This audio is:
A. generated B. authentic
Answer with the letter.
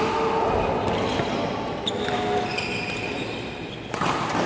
B